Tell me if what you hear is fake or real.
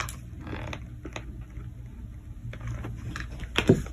real